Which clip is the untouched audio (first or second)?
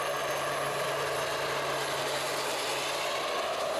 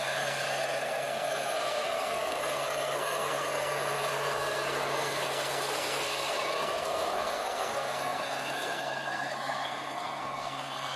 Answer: first